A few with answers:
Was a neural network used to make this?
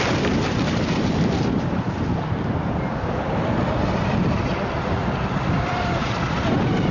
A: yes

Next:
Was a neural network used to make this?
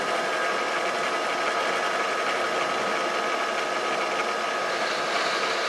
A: no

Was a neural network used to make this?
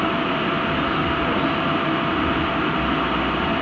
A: no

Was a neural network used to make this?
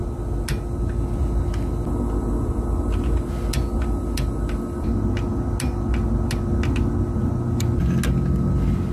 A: no